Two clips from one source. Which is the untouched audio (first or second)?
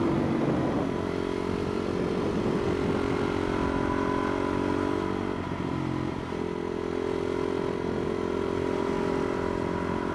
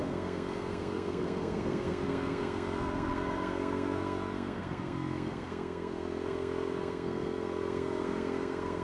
first